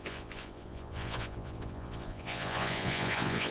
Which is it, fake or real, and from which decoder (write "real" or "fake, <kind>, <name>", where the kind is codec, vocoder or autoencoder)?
fake, vocoder, Vocos